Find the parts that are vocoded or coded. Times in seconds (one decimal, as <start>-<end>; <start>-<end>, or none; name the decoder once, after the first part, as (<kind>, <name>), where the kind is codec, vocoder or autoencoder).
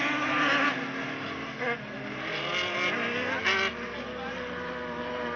none